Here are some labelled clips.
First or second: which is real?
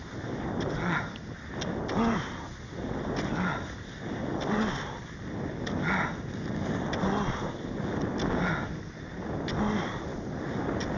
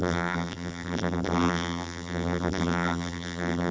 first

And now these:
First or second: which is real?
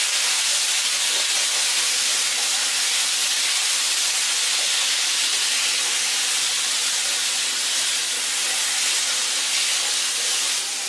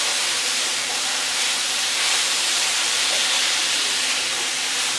first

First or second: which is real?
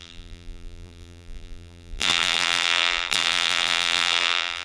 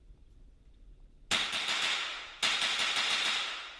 second